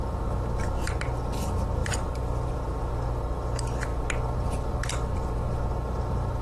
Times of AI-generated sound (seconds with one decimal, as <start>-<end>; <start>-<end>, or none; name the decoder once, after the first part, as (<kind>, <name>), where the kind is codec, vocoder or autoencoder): 1.8-2.9 (vocoder, BigVGAN v2)